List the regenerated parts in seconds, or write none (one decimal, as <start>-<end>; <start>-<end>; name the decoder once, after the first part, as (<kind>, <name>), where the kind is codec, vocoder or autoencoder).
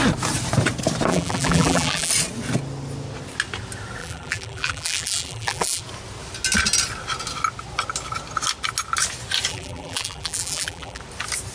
1.1-2.1 (vocoder, BigVGAN v2); 4.0-5.8; 9.5-11.0